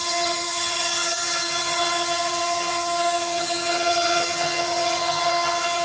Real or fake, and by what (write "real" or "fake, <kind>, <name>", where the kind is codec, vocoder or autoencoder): fake, vocoder, HiFi-GAN